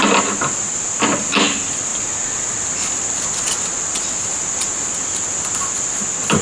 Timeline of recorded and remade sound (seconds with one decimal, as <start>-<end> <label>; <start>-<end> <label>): 0.0-6.4 recorded